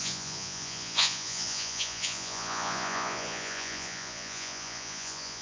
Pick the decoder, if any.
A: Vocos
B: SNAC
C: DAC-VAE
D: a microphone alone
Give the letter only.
A